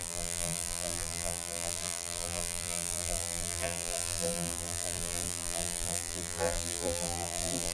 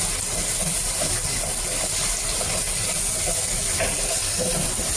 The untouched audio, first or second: second